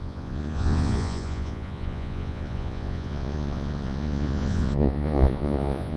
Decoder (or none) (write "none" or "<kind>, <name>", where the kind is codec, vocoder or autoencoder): vocoder, Vocos